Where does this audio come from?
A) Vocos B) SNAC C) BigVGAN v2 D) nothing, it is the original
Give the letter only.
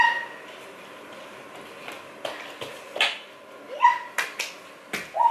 D